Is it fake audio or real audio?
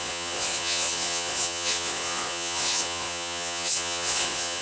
fake